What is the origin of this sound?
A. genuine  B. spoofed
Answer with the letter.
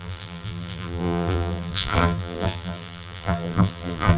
B